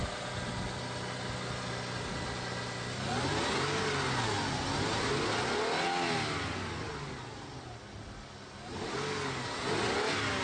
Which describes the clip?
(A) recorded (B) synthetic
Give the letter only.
A